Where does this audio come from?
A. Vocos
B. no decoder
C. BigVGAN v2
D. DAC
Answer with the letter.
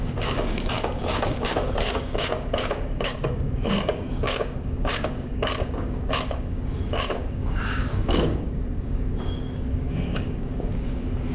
D